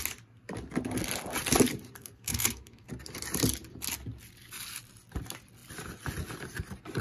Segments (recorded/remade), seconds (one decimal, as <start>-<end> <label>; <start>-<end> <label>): 0.0-2.0 recorded; 2.0-2.9 remade; 2.9-7.0 recorded